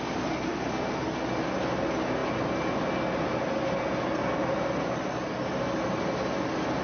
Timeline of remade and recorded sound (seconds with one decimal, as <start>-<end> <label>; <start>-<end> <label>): 0.0-6.8 recorded